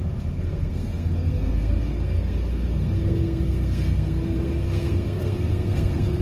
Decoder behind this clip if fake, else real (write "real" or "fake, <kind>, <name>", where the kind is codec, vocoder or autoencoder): fake, codec, SNAC